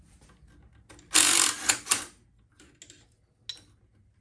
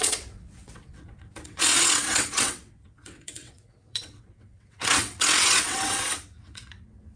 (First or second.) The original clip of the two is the first